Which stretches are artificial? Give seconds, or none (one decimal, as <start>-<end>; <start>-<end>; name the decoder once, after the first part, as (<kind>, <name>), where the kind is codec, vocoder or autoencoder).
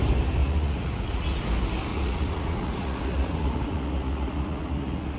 0.4-1.4 (vocoder, Vocos); 1.9-5.2